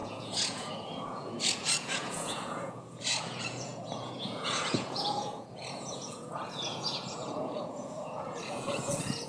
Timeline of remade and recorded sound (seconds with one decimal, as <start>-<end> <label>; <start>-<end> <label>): 0.0-9.3 remade